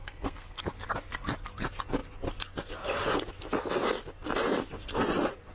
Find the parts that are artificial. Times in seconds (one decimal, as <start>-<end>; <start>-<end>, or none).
0.0-0.6